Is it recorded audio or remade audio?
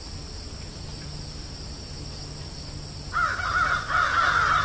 recorded